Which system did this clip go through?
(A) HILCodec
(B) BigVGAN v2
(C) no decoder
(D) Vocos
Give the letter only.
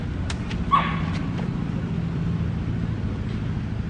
C